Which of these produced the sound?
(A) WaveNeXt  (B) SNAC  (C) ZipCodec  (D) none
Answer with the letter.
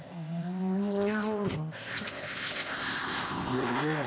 C